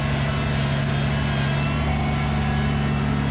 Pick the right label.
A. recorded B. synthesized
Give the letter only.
A